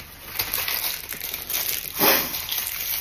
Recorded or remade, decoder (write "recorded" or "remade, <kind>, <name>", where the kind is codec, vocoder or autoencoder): recorded